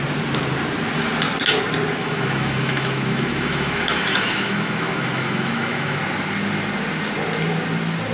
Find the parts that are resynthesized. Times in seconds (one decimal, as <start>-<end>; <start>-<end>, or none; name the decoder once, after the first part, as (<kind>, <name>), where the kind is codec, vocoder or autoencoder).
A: 2.0-6.0 (autoencoder, DAC-VAE)